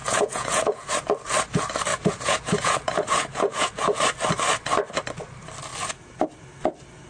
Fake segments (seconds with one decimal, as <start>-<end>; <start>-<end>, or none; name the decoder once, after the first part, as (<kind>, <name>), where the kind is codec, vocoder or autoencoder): 0.0-0.9 (vocoder, Vocos); 1.9-4.0